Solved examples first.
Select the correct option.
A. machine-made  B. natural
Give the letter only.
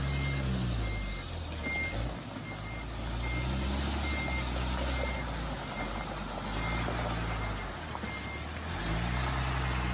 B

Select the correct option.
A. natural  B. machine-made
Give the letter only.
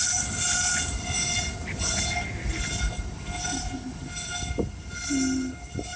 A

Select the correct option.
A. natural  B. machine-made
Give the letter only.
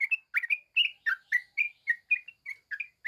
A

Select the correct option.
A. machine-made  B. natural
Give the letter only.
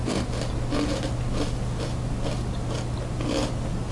B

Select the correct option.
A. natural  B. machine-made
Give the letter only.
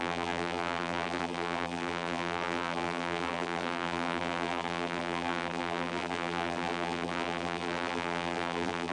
B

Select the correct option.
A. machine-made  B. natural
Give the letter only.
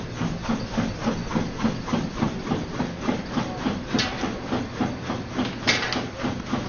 B